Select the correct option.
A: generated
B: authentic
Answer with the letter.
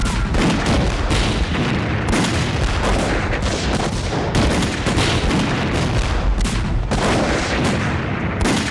A